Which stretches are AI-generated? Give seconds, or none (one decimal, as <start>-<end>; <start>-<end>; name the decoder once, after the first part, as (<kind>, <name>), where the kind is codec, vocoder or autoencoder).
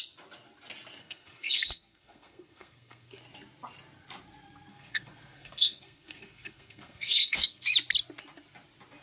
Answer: 1.0-3.2 (codec, SNAC); 4.7-7.7